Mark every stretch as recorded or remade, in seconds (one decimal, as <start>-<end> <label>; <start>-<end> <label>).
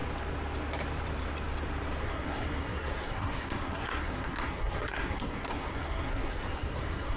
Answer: 0.0-2.0 recorded; 2.0-7.2 remade